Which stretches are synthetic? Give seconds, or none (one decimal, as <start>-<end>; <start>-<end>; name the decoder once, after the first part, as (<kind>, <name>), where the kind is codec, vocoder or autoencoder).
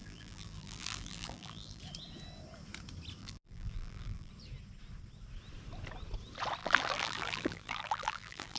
0.0-1.8 (vocoder, BigVGAN v2); 3.2-4.3; 6.6-8.6